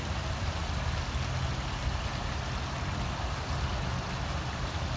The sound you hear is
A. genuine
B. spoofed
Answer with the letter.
A